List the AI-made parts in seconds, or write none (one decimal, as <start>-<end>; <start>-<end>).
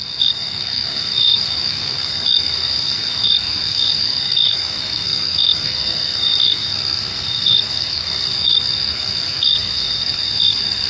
0.0-10.9